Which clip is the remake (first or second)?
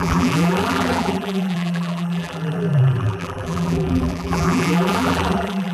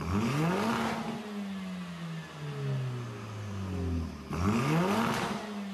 first